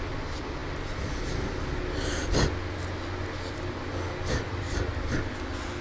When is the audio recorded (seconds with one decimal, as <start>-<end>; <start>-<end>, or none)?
0.0-5.8